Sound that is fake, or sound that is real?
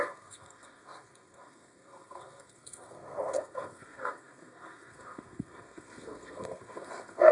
fake